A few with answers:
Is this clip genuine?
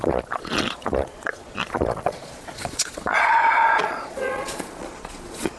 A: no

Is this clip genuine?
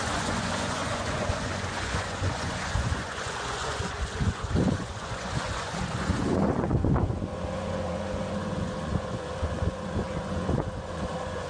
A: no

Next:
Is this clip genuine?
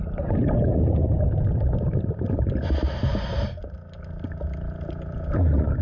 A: yes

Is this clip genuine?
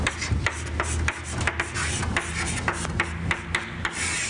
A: yes